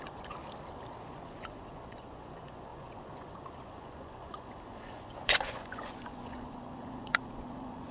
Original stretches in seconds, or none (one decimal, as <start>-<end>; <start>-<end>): 0.4-1.0